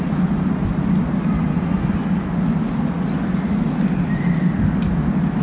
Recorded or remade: recorded